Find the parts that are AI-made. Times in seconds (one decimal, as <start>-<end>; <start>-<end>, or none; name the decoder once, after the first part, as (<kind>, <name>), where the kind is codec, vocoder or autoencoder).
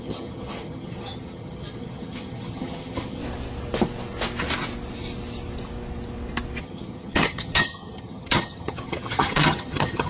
0.0-3.2 (vocoder, HiFi-GAN); 6.6-10.1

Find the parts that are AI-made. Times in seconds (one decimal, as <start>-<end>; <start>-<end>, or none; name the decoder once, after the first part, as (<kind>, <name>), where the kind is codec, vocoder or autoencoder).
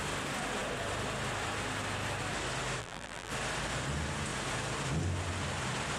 2.8-3.3 (vocoder, BigVGAN v2)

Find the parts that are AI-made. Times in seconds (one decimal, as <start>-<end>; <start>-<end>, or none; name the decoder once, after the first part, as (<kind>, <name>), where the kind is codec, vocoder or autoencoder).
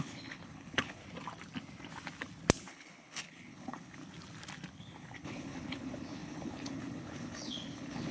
0.0-1.0 (codec, HILCodec); 2.7-4.0; 4.7-8.1